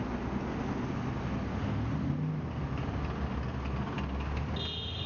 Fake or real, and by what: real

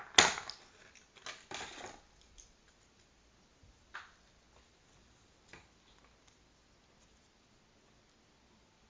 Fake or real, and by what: real